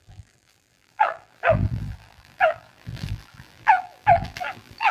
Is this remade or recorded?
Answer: remade